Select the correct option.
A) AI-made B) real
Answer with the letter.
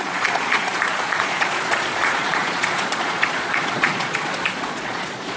A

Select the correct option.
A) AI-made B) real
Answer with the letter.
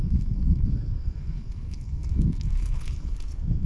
A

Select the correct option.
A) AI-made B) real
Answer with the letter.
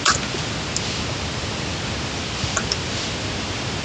B